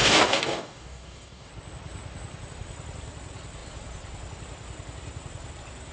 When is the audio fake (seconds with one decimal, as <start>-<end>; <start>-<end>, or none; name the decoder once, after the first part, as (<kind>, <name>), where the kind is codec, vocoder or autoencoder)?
0.0-1.5 (codec, DAC)